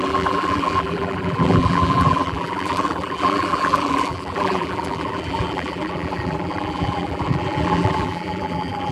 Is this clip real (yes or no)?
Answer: no